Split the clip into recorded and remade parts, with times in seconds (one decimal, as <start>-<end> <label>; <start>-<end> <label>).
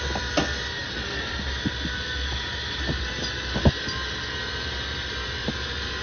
0.0-6.0 recorded